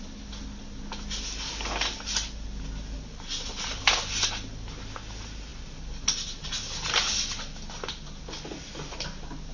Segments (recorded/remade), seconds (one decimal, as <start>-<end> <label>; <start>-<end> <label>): 0.0-9.5 recorded